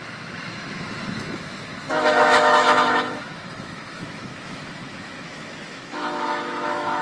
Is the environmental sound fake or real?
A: fake